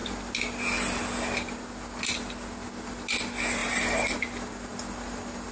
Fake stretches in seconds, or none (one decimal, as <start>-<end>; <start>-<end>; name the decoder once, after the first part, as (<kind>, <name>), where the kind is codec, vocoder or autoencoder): none